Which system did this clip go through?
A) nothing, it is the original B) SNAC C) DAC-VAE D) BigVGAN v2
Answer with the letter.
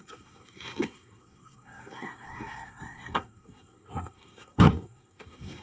B